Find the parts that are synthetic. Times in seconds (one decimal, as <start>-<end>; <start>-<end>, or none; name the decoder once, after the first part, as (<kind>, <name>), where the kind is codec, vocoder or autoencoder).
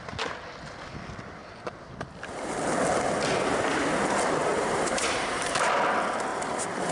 4.5-5.3 (vocoder, BigVGAN v2); 6.3-6.9